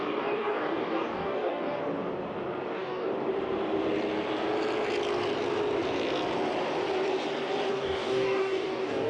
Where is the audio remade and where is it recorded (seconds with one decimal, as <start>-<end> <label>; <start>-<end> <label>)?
0.0-1.8 remade; 1.8-2.7 recorded; 2.7-3.1 remade; 3.1-7.7 recorded; 7.7-9.1 remade